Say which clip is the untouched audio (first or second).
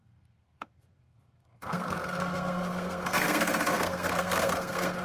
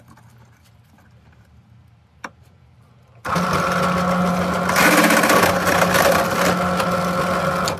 second